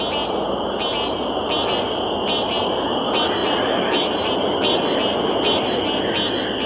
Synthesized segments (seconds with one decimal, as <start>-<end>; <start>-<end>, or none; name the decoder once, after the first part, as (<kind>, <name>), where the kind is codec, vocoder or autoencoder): none